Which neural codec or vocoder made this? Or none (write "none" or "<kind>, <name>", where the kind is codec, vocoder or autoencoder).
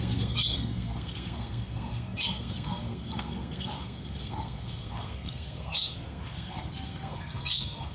codec, SNAC